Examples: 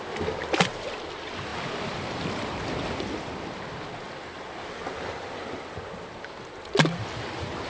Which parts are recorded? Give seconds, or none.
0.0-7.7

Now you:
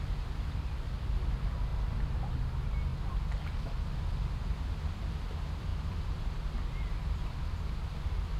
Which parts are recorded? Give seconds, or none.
0.0-8.4

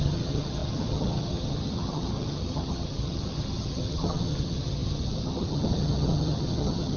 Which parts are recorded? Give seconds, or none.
none

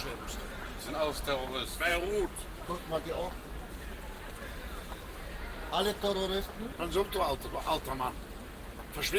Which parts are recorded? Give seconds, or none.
0.0-9.2

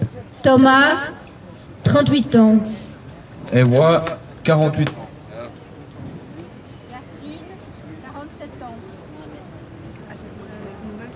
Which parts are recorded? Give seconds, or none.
0.0-0.9; 2.0-2.9; 4.4-11.2